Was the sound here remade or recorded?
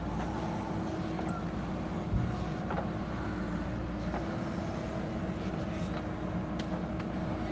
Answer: recorded